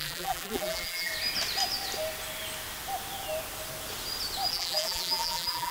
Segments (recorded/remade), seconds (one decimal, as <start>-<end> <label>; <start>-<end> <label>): 0.0-1.1 remade; 1.1-4.5 recorded; 4.5-5.7 remade

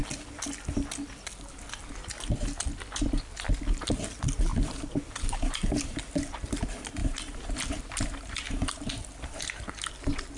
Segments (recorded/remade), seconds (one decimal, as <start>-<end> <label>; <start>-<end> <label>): 0.0-4.5 recorded; 4.5-6.0 remade; 6.0-7.0 recorded; 7.0-8.9 remade; 8.9-10.4 recorded

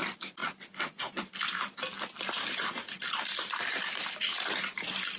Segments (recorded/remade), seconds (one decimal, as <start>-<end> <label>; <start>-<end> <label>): 0.0-0.4 remade; 0.4-1.2 recorded; 1.2-5.2 remade

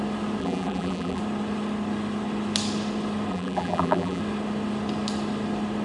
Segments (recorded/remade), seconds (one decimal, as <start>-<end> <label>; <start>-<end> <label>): 0.0-0.4 recorded; 0.4-1.2 remade; 1.2-3.3 recorded; 3.3-4.2 remade; 4.2-5.8 recorded

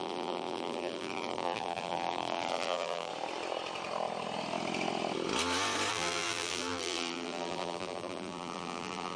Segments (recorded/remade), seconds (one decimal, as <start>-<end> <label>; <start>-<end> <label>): 0.0-3.1 remade; 3.1-5.9 recorded; 5.9-9.2 remade

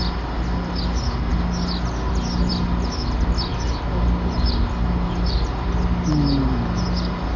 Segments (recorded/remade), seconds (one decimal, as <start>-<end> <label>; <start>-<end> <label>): 0.0-7.4 recorded

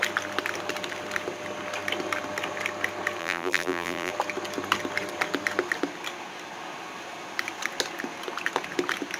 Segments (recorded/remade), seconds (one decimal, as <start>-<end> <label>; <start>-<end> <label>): 0.0-3.2 recorded; 3.2-4.1 remade; 4.1-9.2 recorded